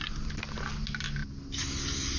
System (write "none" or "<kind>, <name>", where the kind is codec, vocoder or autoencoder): none